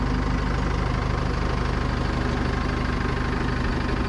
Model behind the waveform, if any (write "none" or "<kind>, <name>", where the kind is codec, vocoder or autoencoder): none